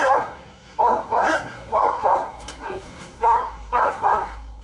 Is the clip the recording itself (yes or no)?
no